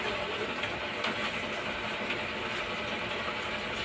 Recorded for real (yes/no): yes